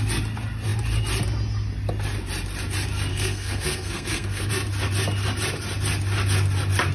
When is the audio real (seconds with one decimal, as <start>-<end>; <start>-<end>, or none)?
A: 0.0-3.1; 4.5-6.9